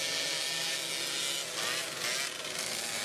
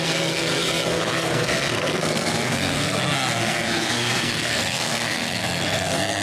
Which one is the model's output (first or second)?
second